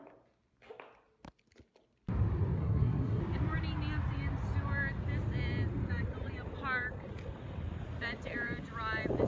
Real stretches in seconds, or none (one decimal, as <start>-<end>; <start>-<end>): 0.0-2.6; 3.2-9.3